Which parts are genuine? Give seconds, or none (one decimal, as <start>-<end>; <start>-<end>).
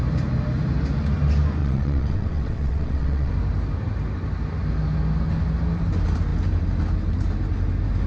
0.0-1.6; 3.3-8.1